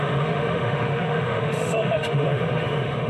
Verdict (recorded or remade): remade